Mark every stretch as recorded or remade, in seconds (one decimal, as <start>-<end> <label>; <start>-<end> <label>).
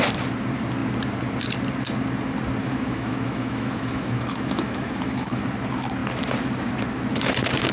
0.0-2.6 recorded; 2.6-5.4 remade; 5.4-7.7 recorded